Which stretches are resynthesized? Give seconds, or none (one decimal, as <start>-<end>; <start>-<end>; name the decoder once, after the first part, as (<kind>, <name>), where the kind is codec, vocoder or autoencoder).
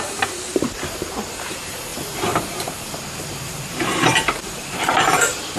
0.0-5.6 (vocoder, BigVGAN v2)